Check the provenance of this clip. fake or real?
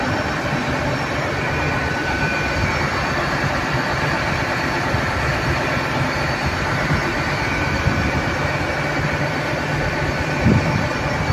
fake